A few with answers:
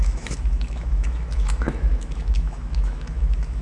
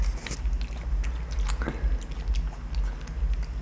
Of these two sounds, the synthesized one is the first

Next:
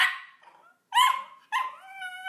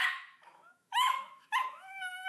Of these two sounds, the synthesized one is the second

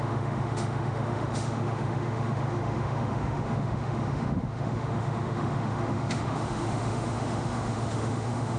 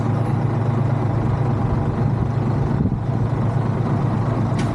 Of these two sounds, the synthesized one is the first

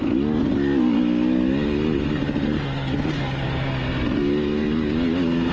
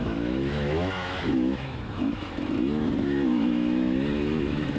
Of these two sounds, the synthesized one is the second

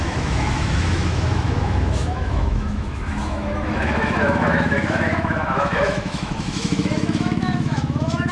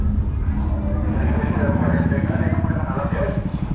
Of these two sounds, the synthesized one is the first